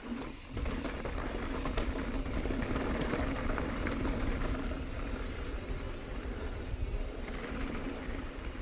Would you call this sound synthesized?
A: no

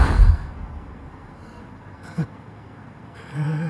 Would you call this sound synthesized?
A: yes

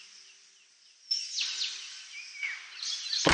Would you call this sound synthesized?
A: no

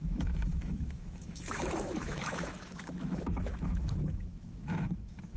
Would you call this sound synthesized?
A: yes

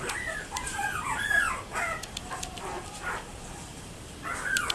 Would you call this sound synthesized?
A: no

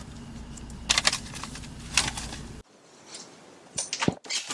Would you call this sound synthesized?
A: no